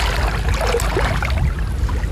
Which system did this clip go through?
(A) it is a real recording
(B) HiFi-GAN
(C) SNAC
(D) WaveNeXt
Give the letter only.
A